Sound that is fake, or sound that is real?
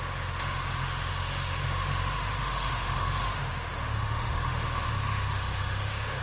fake